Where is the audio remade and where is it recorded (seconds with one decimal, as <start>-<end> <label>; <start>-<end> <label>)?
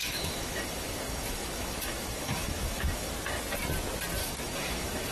0.0-3.1 remade; 3.1-4.2 recorded; 4.2-5.1 remade